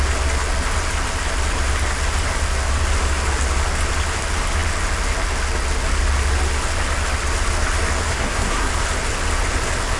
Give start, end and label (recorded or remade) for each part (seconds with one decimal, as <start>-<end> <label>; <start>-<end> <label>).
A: 0.0-8.1 recorded; 8.1-8.7 remade; 8.7-10.0 recorded